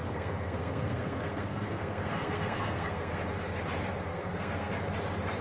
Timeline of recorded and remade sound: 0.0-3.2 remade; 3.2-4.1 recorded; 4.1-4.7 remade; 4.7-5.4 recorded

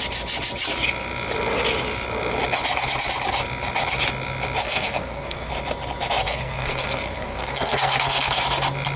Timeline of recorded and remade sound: 0.0-4.6 recorded; 4.6-5.5 remade; 5.5-6.2 recorded; 6.2-8.4 remade; 8.4-9.0 recorded

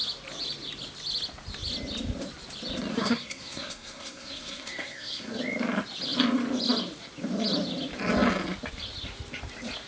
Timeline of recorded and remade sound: 0.0-2.9 recorded; 2.9-5.4 remade; 5.4-9.9 recorded

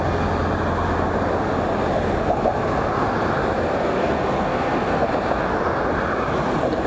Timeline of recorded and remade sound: 0.0-3.7 recorded; 3.7-5.1 remade; 5.1-6.9 recorded

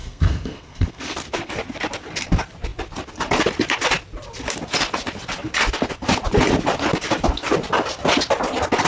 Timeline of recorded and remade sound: 0.0-1.5 remade; 1.5-8.9 recorded